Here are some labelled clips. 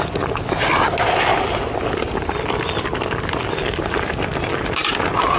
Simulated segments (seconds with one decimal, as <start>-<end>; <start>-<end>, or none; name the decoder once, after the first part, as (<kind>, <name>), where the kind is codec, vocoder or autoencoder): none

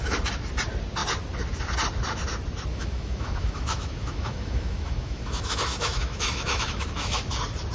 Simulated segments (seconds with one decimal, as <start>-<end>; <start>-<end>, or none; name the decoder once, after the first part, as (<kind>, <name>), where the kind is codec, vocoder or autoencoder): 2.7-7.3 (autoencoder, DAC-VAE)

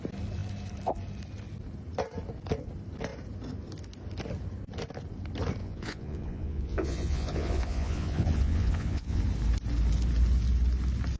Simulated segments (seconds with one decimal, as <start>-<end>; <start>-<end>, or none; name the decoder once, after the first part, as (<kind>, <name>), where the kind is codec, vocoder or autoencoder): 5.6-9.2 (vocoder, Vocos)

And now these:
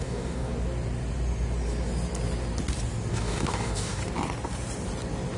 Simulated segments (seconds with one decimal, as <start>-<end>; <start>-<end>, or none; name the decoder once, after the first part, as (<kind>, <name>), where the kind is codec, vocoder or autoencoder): 0.0-0.5 (codec, DAC); 3.1-4.0

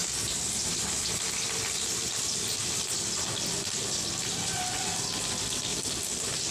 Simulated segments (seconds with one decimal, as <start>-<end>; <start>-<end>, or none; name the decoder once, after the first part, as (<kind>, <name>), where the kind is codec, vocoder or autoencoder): 0.0-2.6 (vocoder, BigVGAN v2); 5.7-6.5

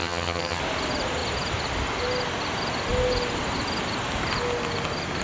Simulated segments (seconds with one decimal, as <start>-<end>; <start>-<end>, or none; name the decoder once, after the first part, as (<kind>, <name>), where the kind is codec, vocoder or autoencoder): 0.0-0.6 (vocoder, HiFi-GAN)

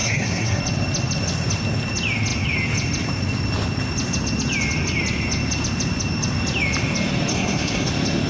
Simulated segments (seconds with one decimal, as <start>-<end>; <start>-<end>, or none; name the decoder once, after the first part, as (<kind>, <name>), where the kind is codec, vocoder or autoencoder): 0.0-0.6 (codec, SNAC); 7.3-7.9